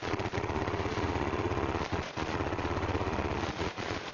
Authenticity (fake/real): fake